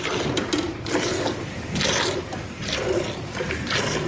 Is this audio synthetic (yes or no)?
no